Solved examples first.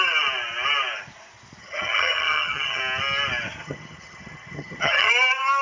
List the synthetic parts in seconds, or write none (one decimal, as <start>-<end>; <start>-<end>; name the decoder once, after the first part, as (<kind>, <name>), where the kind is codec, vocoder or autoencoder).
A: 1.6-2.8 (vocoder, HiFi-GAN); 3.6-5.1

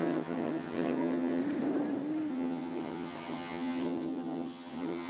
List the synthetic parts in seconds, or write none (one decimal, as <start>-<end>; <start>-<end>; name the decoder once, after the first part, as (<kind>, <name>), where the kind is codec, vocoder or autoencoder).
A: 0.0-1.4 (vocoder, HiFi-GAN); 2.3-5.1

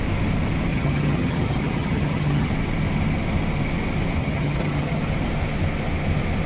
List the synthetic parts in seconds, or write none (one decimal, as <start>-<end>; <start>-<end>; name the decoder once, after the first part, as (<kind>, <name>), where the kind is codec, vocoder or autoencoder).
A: 0.7-2.5 (vocoder, HiFi-GAN); 4.2-5.0